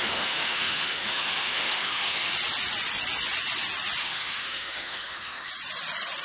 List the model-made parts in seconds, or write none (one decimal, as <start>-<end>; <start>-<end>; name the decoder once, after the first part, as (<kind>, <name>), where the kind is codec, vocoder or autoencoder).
0.0-2.3 (autoencoder, DAC-VAE); 4.0-5.5